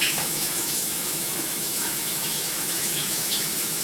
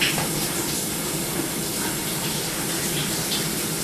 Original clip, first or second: second